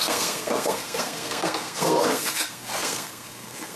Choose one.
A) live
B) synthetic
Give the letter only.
B